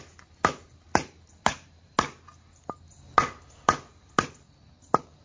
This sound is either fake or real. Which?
real